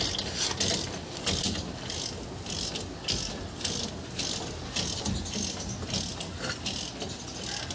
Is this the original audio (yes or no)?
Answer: yes